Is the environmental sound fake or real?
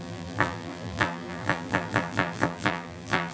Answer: fake